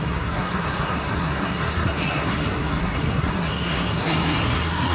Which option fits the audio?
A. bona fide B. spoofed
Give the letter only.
B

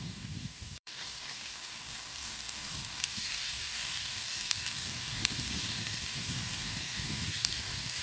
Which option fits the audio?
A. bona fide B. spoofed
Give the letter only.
B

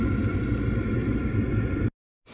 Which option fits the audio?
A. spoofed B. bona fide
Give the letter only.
B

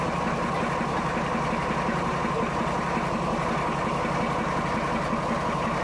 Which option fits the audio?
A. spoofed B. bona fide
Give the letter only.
B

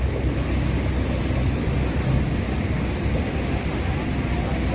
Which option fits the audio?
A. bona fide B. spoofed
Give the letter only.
A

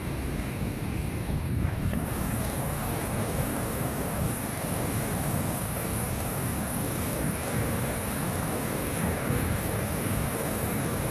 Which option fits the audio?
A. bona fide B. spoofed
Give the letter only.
B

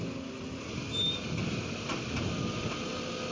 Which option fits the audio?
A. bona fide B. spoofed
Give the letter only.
A